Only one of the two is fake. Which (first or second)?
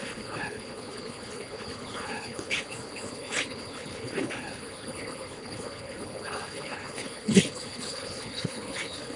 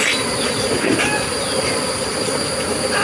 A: first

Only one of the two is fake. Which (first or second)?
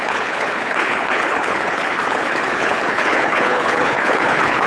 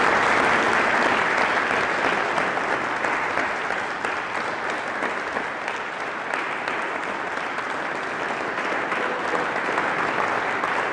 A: first